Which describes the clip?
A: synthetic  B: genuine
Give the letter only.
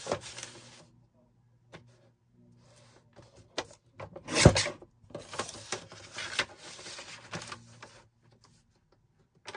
B